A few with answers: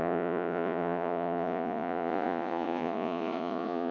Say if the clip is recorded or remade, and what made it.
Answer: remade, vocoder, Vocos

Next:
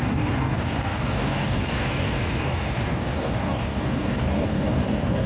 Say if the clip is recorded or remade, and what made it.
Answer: remade, codec, DAC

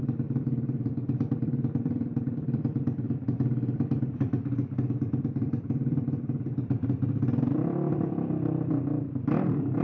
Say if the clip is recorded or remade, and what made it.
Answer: remade, vocoder, BigVGAN v2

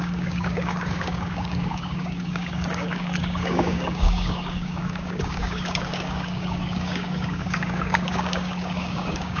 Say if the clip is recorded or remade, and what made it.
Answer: remade, codec, DAC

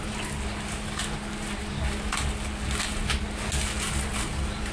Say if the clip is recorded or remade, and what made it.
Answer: recorded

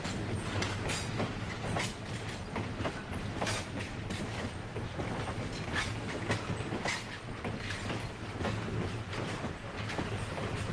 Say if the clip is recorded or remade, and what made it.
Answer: recorded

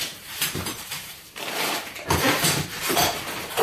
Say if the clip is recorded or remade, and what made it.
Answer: remade, vocoder, BigVGAN v2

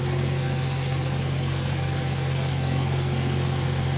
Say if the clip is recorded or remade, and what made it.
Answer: remade, codec, SNAC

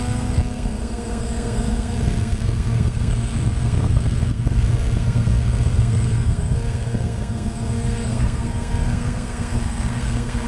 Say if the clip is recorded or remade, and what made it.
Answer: remade, codec, SNAC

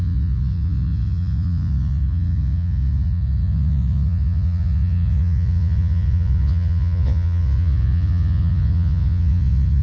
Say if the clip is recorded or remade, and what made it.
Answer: remade, vocoder, Vocos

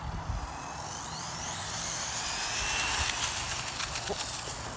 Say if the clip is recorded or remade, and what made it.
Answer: recorded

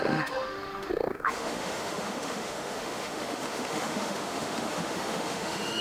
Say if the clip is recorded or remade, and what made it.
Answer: remade, autoencoder, DAC-VAE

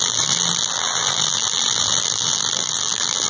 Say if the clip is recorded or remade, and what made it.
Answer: remade, vocoder, BigVGAN v2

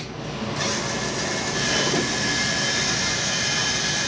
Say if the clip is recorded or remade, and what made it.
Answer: recorded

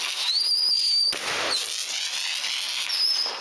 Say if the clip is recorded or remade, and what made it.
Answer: recorded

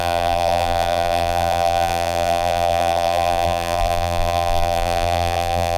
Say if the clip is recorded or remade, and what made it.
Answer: remade, vocoder, BigVGAN v2